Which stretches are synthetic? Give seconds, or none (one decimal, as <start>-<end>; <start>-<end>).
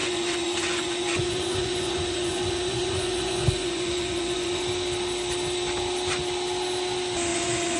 0.0-4.6; 7.3-7.8